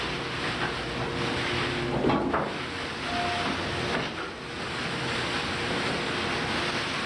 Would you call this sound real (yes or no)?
yes